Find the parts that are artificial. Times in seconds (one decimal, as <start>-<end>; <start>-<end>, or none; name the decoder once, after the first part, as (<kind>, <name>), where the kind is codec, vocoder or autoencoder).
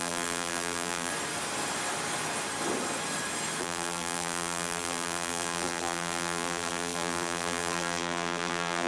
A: 0.0-1.1 (vocoder, BigVGAN v2); 3.6-8.9